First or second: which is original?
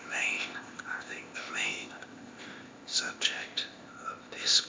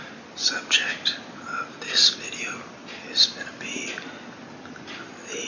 second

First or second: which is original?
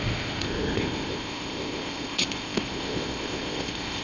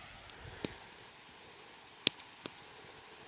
second